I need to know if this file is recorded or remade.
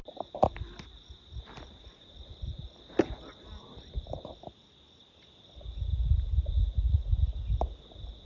recorded